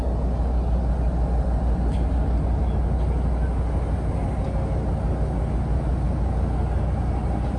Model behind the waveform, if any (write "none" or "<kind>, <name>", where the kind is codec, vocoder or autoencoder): none